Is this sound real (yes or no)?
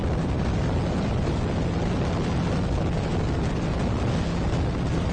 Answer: yes